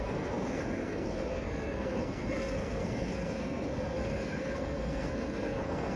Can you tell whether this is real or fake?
fake